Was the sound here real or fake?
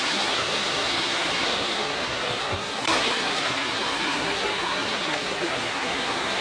fake